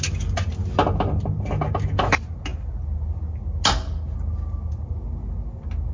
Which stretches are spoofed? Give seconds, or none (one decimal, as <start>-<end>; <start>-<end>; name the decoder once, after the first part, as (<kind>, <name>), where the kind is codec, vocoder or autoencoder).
none